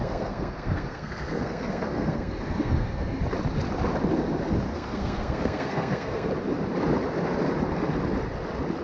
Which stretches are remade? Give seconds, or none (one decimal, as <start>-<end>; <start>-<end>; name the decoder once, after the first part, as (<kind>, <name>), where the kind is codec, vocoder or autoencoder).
0.0-3.2 (codec, SNAC); 4.7-6.3